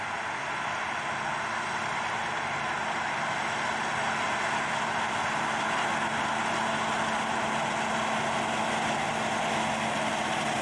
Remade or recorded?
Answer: recorded